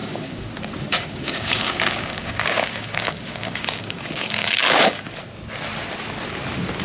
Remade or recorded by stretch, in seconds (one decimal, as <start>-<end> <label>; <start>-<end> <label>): 0.0-0.5 remade; 0.5-0.9 recorded; 0.9-5.0 remade; 5.0-6.8 recorded